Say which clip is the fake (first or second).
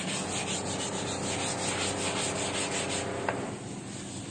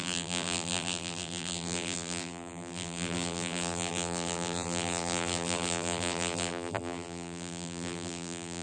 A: second